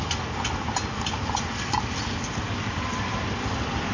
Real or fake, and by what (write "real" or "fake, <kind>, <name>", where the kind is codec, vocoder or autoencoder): real